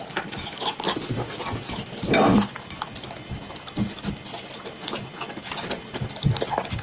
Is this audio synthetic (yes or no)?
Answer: no